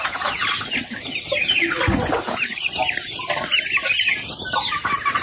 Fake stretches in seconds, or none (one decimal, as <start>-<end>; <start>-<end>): none